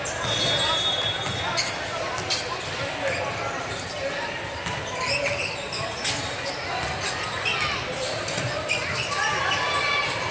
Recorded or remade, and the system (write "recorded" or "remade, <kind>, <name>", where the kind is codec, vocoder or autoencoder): recorded